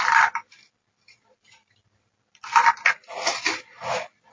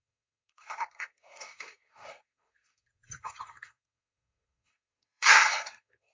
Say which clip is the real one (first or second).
first